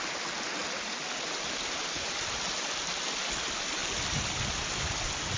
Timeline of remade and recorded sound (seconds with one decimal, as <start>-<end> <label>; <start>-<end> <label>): 0.0-0.6 recorded; 0.6-2.4 remade; 2.4-3.8 recorded; 3.8-5.0 remade; 5.0-5.4 recorded